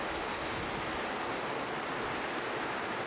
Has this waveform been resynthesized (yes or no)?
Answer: no